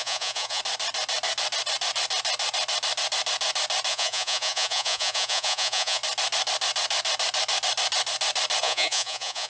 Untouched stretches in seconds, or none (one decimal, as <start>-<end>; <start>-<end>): 0.6-3.9; 6.0-8.6